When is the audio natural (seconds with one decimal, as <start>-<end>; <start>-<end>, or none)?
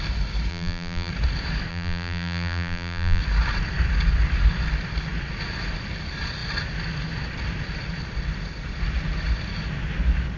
0.0-0.5; 1.1-1.7; 3.2-10.4